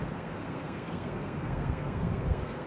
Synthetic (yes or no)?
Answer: yes